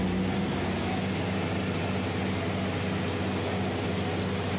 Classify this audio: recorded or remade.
recorded